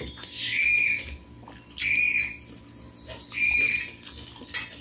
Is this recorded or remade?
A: recorded